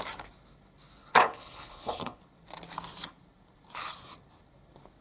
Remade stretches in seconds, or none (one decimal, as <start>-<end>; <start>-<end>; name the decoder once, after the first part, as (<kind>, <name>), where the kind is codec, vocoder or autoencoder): 1.0-2.2 (codec, HILCodec)